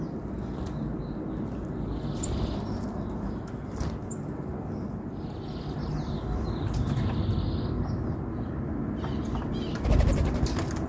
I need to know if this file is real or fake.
real